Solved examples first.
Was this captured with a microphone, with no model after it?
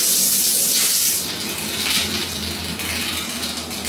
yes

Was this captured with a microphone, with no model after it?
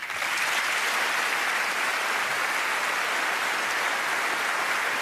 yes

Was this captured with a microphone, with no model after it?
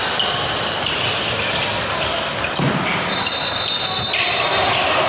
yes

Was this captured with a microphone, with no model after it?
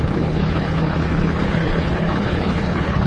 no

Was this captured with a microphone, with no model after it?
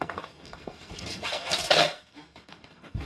no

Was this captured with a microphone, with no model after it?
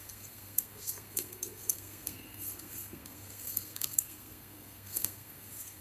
no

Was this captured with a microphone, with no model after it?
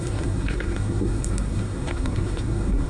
no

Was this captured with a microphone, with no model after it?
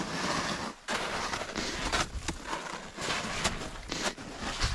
yes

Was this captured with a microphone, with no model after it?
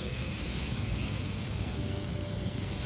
no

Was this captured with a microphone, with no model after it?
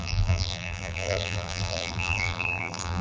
no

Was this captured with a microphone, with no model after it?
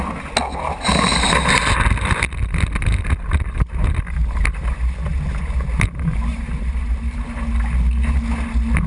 yes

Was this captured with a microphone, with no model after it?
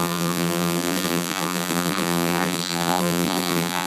no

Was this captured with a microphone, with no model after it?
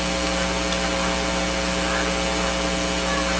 yes